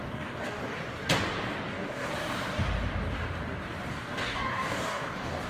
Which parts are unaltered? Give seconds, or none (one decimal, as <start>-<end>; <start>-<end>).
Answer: 0.8-1.7; 2.1-3.9